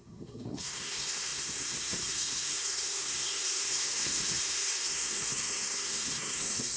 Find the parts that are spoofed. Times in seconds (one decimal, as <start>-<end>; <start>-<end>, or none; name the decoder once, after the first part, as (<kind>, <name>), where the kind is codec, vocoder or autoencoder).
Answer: 0.0-6.8 (codec, SNAC)